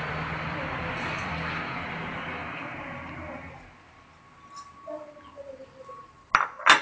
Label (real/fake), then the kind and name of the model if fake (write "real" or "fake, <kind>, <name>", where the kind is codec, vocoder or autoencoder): real